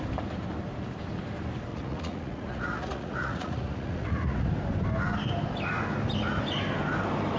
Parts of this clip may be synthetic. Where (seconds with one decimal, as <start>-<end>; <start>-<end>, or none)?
1.7-4.5